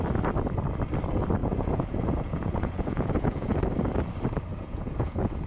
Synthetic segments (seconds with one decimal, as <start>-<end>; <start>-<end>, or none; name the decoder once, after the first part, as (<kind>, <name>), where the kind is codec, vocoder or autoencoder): 1.4-3.5 (vocoder, Vocos); 4.5-5.5